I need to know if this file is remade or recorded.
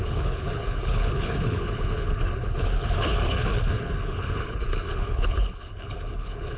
remade